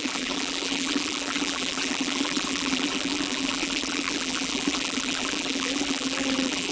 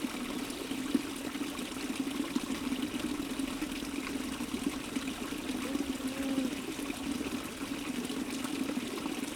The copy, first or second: first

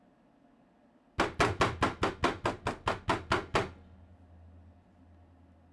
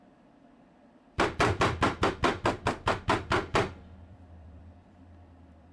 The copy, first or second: second